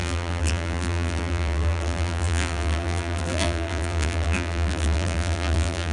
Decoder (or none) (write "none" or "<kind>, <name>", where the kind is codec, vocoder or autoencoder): vocoder, BigVGAN v2